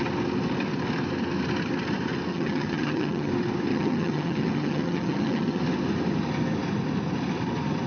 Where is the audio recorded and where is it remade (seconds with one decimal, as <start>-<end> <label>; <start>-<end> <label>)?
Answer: 0.0-2.3 recorded; 2.3-3.3 remade; 3.3-3.7 recorded; 3.7-5.6 remade; 5.6-7.9 recorded